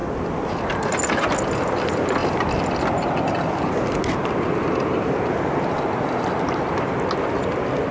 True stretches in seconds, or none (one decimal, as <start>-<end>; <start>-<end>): 0.0-7.9